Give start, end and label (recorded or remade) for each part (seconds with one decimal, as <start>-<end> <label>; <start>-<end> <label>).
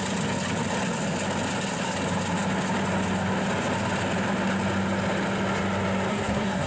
0.0-6.1 recorded; 6.1-6.7 remade